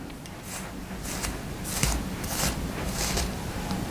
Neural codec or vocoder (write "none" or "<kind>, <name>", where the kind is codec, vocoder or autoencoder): none